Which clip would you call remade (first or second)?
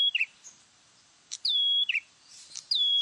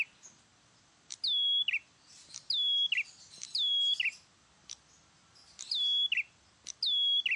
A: first